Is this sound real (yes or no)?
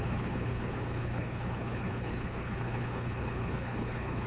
no